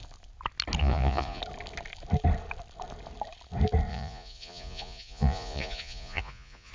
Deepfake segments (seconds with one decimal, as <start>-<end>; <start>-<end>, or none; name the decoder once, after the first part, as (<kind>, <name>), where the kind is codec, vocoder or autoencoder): 0.8-1.4 (vocoder, Vocos); 3.9-6.7